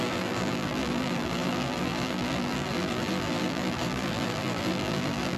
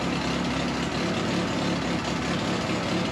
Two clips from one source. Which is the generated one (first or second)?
first